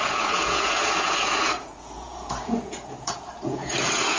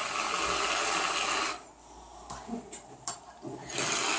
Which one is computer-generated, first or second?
first